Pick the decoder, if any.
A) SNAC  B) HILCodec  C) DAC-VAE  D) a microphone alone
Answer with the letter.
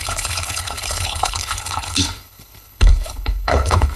B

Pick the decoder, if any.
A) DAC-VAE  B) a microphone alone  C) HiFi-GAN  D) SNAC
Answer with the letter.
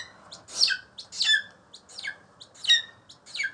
B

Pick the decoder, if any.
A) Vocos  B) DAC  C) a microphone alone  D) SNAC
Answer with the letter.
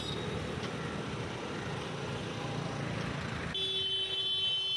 C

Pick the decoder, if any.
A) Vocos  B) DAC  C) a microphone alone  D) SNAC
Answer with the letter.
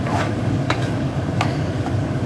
B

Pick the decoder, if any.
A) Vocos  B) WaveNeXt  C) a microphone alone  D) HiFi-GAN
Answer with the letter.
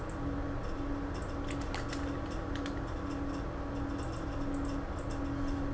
C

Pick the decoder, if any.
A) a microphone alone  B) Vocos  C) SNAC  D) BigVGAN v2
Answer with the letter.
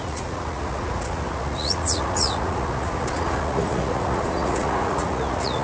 B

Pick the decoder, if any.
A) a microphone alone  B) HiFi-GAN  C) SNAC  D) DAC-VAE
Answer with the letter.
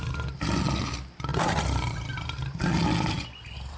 A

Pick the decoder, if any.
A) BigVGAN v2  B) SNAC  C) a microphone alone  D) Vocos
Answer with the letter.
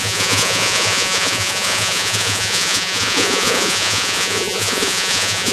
D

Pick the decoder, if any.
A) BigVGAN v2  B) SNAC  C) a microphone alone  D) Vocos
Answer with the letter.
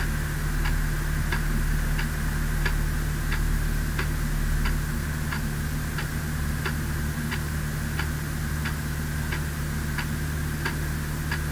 C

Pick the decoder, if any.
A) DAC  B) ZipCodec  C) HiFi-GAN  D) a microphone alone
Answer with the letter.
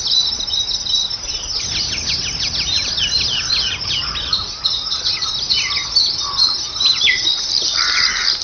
D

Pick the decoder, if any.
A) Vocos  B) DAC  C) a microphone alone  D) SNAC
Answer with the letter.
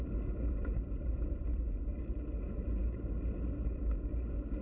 C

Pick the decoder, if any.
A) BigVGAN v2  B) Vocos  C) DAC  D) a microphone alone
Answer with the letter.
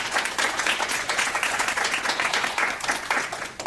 B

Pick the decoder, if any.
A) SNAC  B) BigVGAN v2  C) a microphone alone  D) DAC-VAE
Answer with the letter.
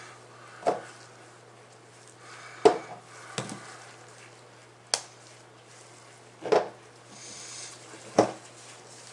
C